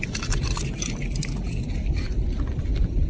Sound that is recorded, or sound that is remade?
recorded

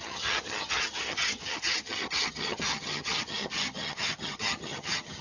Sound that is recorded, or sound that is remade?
remade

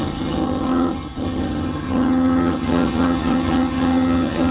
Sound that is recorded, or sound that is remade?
remade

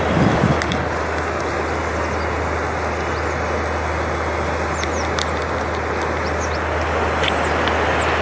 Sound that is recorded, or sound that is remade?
recorded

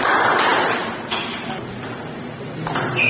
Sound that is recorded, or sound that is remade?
recorded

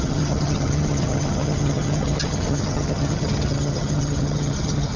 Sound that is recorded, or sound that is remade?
remade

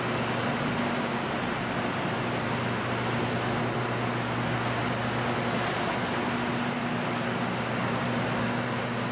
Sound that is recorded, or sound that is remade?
recorded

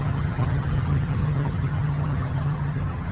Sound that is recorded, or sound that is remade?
remade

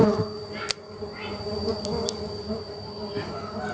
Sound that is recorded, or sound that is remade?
recorded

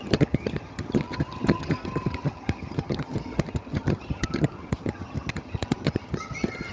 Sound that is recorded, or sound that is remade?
remade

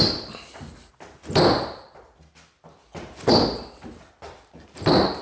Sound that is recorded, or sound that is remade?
recorded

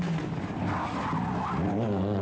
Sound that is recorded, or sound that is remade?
recorded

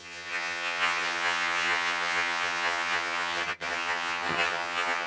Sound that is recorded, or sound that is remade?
remade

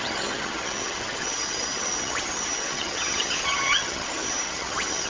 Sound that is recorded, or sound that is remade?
remade